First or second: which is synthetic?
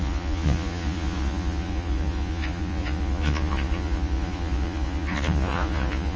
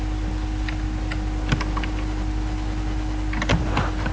first